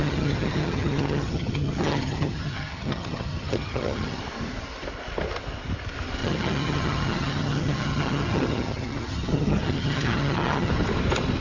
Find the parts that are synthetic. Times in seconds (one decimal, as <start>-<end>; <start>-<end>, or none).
0.0-4.2; 6.2-10.7